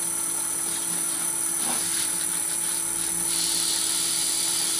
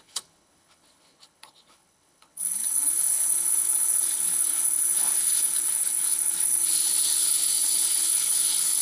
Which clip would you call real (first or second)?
first